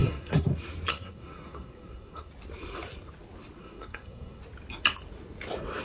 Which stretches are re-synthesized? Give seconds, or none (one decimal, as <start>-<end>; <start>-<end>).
0.0-0.5; 0.9-2.3; 3.6-4.4